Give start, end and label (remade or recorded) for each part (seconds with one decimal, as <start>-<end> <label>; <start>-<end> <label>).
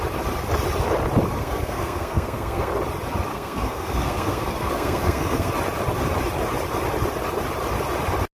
0.0-1.4 recorded; 1.4-2.7 remade; 2.7-3.3 recorded; 3.3-5.5 remade; 5.5-8.4 recorded